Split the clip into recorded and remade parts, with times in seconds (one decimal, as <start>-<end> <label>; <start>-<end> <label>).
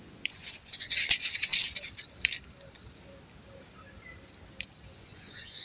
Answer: 0.0-1.5 remade; 1.5-4.9 recorded; 4.9-5.6 remade